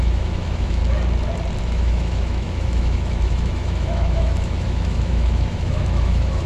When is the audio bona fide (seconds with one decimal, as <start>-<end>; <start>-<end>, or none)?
0.8-1.6